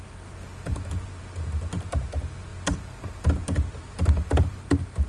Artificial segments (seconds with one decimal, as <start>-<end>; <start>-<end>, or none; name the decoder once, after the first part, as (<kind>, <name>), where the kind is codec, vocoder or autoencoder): 0.7-1.2 (vocoder, BigVGAN v2)